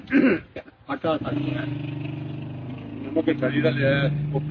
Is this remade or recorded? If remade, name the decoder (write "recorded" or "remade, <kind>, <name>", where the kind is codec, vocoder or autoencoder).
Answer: recorded